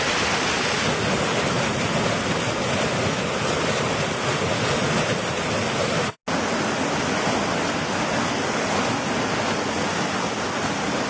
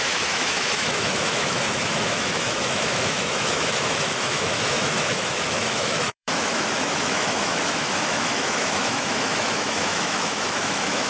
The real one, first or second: first